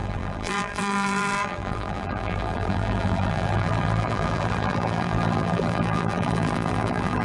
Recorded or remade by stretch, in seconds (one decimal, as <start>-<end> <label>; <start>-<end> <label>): 0.0-7.2 remade